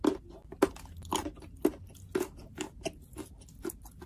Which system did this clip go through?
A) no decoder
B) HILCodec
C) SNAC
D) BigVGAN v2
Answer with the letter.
A